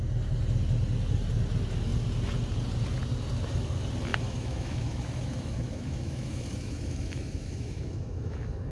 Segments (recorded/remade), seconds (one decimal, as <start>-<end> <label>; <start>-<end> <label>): 0.0-4.1 recorded; 4.1-8.7 remade